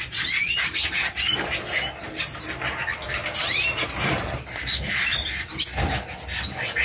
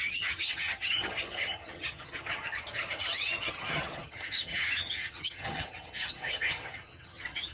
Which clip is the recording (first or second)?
first